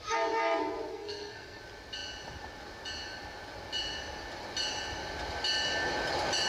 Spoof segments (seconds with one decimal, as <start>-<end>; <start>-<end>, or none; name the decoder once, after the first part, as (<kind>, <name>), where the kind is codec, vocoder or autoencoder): 0.9-1.6 (codec, SNAC)